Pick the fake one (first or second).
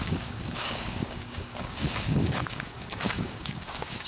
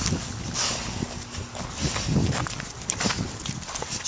first